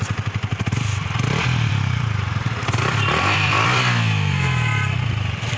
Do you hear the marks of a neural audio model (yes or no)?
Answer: yes